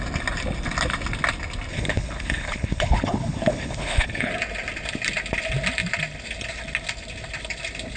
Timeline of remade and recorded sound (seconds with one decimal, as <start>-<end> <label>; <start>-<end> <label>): 0.0-1.7 recorded; 1.7-4.3 remade; 4.3-8.0 recorded